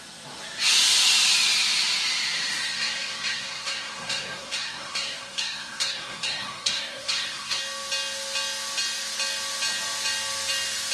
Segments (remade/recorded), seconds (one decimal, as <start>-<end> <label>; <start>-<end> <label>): 0.0-2.6 recorded; 2.6-7.6 remade; 7.6-10.9 recorded